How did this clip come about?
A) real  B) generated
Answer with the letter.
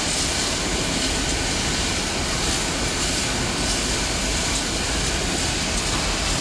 A